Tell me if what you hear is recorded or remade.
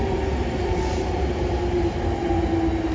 recorded